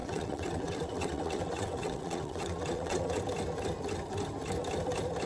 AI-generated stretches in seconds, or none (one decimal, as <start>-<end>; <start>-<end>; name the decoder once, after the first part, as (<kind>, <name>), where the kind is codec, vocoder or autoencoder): 0.0-3.2 (vocoder, WaveNeXt)